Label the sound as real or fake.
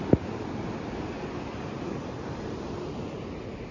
real